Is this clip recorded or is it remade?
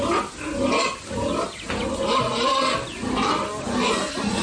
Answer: recorded